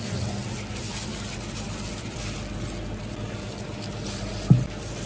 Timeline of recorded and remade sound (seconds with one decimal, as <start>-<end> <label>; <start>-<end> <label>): 0.0-5.1 recorded